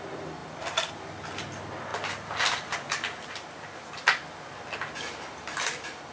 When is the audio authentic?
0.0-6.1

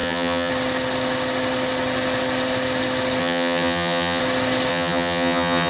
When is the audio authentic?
0.5-3.2; 4.2-4.7